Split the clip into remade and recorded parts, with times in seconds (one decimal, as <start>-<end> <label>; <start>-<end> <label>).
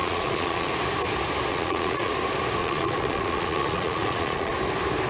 0.0-0.7 remade; 0.7-1.5 recorded; 1.5-2.1 remade; 2.1-2.6 recorded; 2.6-4.5 remade; 4.5-5.1 recorded